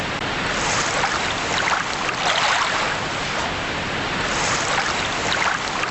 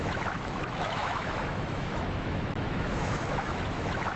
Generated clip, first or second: second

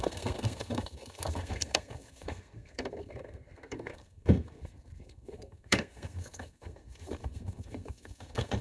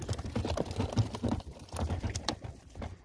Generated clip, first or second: first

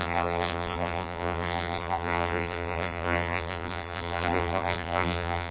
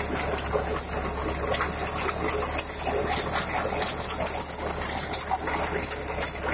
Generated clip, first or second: first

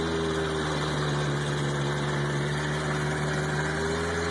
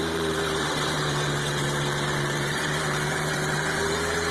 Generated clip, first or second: second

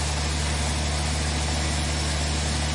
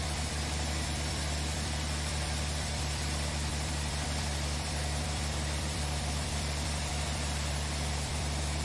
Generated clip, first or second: second